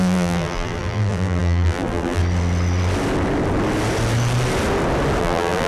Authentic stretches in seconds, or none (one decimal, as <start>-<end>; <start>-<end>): 2.2-5.2